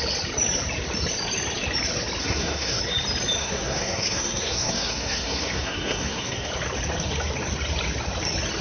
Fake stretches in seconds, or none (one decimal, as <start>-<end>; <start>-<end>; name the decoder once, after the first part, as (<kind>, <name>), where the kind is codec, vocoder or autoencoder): 2.2-2.8 (codec, SNAC); 3.4-6.5